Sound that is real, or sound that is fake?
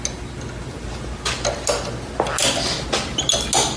real